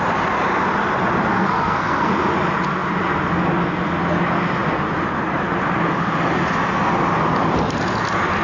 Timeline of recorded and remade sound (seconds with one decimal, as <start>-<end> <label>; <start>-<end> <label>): 0.0-1.3 recorded; 1.3-2.1 remade; 2.1-8.4 recorded